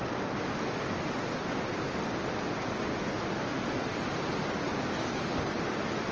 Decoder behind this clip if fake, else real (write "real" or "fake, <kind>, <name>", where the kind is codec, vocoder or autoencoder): real